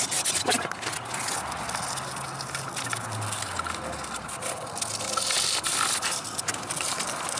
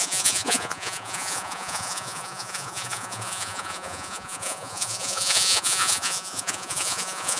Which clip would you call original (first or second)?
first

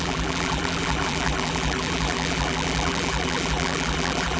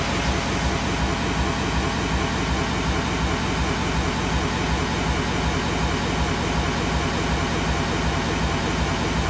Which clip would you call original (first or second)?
second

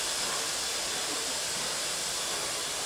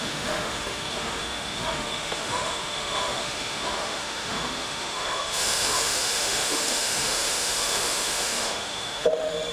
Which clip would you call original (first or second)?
first